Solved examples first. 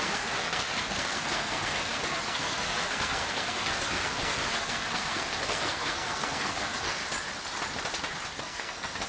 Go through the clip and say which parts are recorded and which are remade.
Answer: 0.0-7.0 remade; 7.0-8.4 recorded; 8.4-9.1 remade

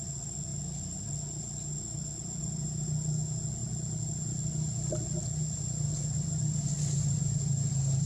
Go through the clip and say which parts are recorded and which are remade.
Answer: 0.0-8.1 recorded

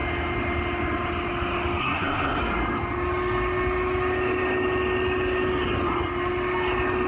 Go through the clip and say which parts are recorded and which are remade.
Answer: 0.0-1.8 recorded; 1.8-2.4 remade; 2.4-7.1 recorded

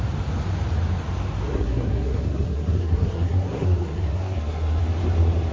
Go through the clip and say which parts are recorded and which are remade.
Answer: 0.0-1.5 recorded; 1.5-4.8 remade; 4.8-5.5 recorded

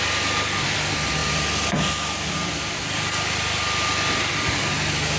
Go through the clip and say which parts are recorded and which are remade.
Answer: 0.0-5.2 recorded

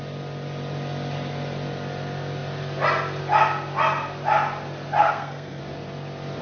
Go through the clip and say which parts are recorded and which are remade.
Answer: 0.0-5.0 recorded; 5.0-5.6 remade; 5.6-6.4 recorded